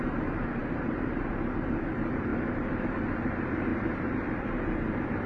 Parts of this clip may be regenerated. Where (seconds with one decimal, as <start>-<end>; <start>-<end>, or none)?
0.0-5.3